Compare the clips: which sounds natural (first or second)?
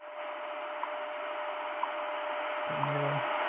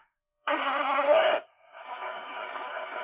first